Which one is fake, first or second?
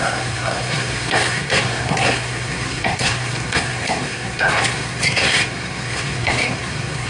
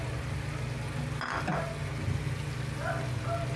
first